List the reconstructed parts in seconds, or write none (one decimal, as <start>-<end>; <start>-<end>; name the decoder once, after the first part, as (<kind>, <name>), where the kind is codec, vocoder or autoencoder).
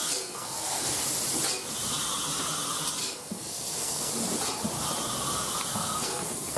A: 0.0-1.0 (codec, SNAC); 3.0-4.1; 5.7-6.6